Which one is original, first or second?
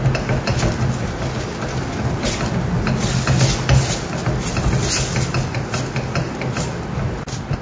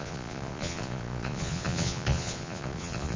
first